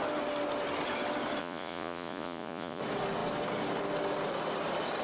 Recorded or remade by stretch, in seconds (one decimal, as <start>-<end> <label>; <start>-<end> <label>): 0.0-1.4 recorded; 1.4-2.8 remade; 2.8-5.0 recorded